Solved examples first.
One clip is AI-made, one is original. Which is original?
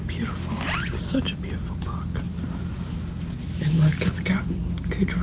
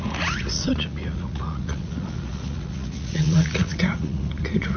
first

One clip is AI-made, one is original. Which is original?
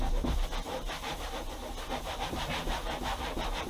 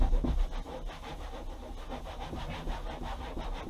second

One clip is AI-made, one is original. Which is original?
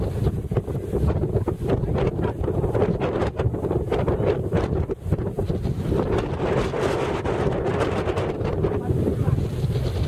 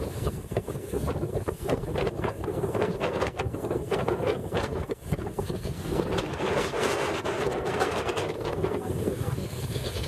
first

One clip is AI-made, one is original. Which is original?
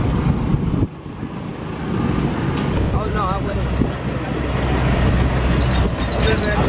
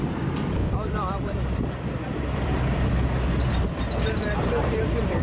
first